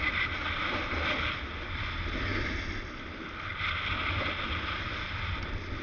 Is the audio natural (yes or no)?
yes